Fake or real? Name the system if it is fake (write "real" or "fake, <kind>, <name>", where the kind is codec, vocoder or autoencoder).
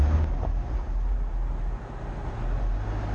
real